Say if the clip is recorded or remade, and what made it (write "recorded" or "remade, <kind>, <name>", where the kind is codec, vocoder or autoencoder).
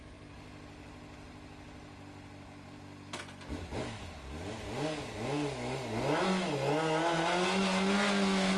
recorded